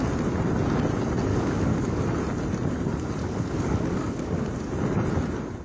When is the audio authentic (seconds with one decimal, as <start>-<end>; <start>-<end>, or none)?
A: 0.0-1.3; 2.0-3.2; 4.5-5.6